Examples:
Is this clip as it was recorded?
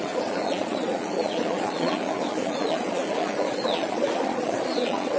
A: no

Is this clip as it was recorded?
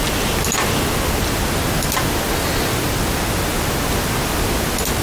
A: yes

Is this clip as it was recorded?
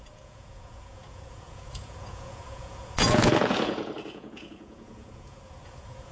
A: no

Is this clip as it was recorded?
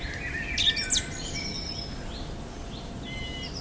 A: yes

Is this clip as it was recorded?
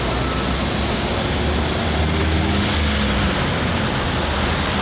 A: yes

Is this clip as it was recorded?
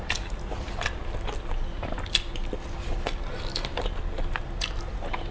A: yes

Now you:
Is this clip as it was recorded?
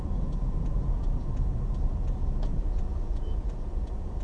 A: no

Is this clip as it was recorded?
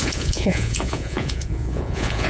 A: no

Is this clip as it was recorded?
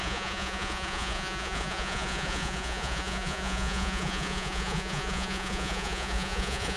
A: no